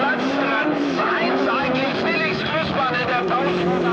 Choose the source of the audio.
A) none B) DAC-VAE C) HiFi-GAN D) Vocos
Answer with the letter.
B